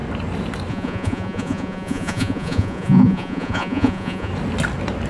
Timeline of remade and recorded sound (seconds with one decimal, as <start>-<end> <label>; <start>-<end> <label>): 0.0-0.7 recorded; 0.7-4.3 remade; 4.3-5.1 recorded